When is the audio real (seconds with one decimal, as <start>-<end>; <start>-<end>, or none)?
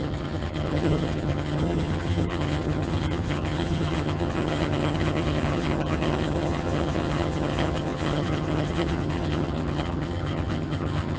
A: none